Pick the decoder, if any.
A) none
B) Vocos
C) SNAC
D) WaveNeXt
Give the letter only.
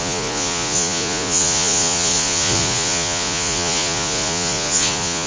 B